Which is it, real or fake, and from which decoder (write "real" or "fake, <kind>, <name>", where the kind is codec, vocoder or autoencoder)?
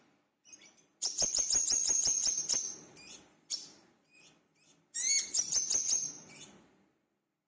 real